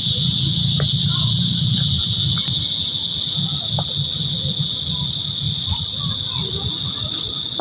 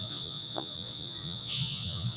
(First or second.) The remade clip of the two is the second